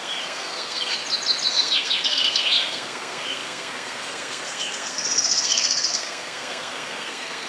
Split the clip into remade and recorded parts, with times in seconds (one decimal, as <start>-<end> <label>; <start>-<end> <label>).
0.0-1.0 remade; 1.0-1.5 recorded; 1.5-7.5 remade